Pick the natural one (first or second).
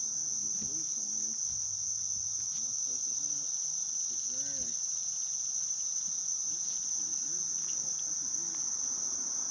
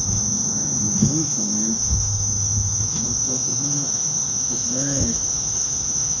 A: first